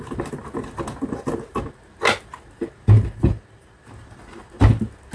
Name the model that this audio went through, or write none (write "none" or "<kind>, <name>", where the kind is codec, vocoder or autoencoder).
none